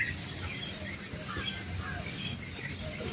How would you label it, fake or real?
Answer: real